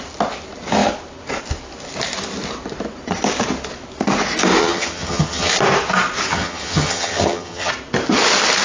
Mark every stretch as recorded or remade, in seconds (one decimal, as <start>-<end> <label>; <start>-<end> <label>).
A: 0.0-4.6 recorded; 4.6-5.5 remade; 5.5-6.3 recorded; 6.3-7.7 remade; 7.7-8.6 recorded